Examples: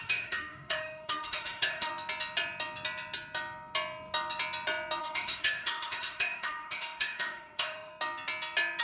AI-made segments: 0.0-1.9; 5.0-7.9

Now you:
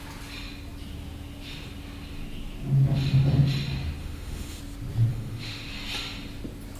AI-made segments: 4.0-4.6; 5.1-5.7

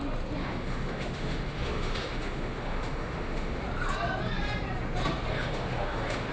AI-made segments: 0.4-3.6; 5.3-6.3

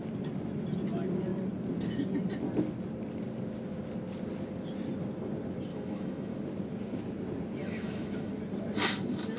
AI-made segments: 5.7-6.4; 7.6-8.3